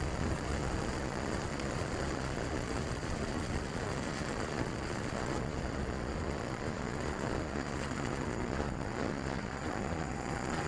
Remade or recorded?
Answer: remade